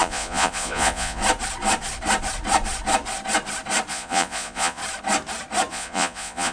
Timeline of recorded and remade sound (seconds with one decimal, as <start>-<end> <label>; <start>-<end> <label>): 0.0-1.2 remade; 1.2-3.9 recorded; 3.9-4.8 remade; 4.8-5.7 recorded; 5.7-6.5 remade